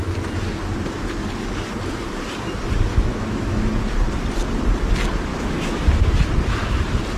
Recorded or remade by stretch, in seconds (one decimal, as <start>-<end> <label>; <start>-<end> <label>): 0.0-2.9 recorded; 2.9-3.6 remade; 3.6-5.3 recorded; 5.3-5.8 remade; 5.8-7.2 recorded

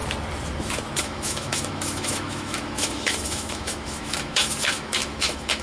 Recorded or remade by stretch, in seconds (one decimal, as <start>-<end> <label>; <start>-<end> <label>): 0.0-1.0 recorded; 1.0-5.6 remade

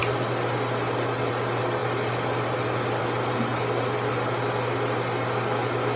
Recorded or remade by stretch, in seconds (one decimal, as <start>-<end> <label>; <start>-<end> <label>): 0.0-6.0 recorded

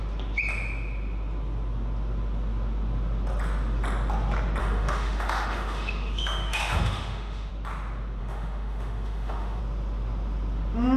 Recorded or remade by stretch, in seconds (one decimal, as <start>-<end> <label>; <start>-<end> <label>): 0.0-4.6 recorded; 4.6-7.5 remade; 7.5-8.2 recorded; 8.2-9.6 remade; 9.6-11.0 recorded

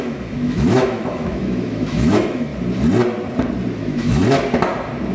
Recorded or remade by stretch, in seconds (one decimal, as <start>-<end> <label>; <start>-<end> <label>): 0.0-2.5 remade; 2.5-3.8 recorded; 3.8-4.2 remade; 4.2-5.1 recorded

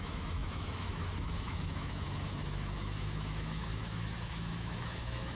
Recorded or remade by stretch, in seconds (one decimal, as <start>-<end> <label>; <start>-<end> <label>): 0.0-5.3 remade